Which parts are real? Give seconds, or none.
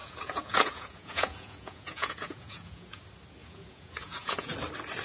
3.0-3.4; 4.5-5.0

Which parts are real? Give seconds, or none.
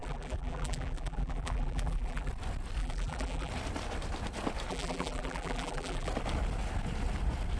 2.3-2.8; 3.5-4.7; 6.1-7.6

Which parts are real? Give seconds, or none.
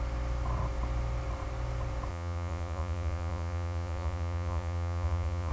0.0-2.1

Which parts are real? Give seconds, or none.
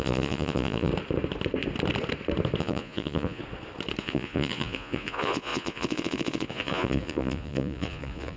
0.9-2.6; 3.4-4.0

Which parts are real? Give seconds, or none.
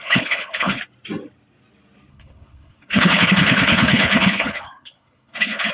0.8-2.1